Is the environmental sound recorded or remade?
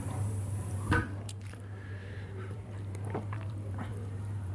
remade